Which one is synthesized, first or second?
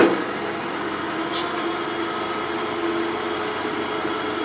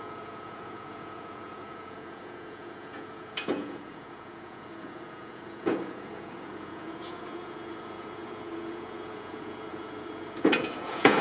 second